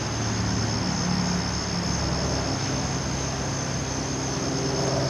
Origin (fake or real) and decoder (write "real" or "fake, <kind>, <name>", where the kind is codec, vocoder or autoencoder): real